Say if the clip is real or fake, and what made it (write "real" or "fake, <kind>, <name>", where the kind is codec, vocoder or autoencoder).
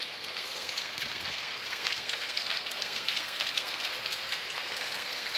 fake, codec, SNAC